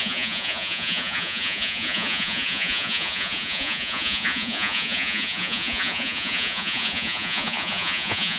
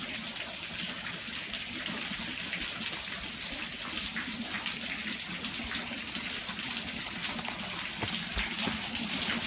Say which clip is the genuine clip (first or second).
second